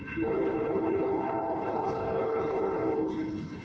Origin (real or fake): fake